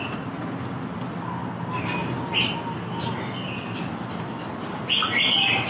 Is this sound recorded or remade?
recorded